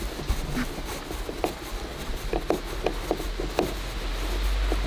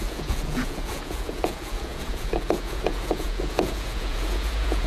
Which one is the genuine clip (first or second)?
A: first